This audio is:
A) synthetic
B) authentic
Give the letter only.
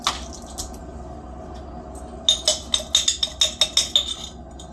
B